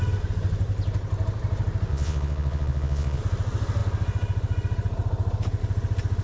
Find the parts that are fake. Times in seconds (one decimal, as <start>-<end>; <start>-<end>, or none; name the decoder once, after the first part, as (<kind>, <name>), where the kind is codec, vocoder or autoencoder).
1.9-3.2 (vocoder, Vocos)